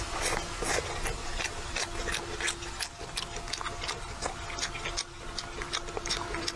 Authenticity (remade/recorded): recorded